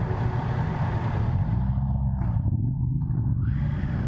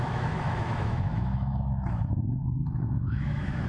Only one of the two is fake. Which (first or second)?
second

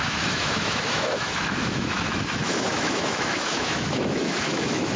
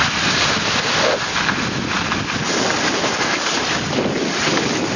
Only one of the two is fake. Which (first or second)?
first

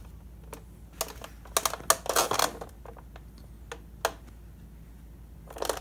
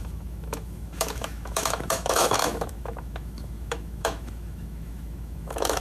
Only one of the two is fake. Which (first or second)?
second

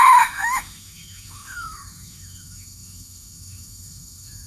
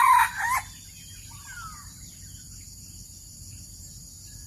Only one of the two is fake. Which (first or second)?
first